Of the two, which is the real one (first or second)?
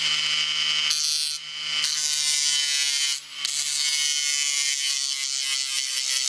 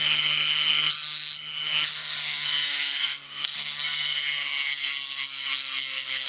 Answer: first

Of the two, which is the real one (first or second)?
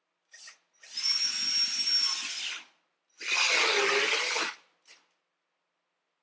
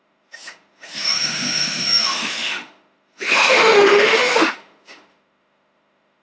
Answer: first